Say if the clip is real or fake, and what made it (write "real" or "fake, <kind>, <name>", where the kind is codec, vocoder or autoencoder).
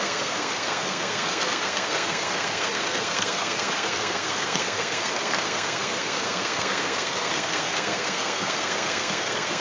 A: fake, codec, SNAC